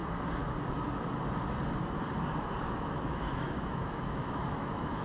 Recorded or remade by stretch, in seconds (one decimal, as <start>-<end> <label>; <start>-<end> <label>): 0.0-2.6 recorded; 2.6-5.0 remade